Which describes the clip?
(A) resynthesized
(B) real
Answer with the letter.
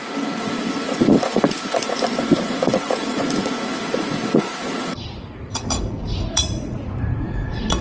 A